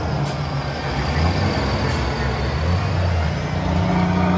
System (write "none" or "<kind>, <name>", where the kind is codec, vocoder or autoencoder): none